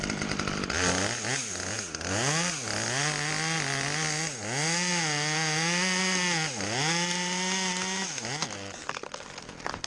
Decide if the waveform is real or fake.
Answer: real